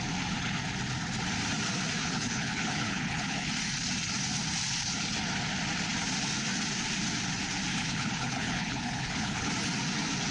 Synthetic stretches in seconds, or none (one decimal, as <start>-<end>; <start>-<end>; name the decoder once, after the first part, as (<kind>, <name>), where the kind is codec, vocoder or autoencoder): 2.0-3.5 (codec, HILCodec); 7.7-9.5